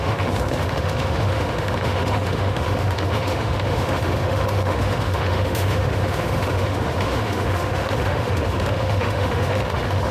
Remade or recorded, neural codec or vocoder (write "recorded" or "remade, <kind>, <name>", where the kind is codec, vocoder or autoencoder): remade, autoencoder, DAC-VAE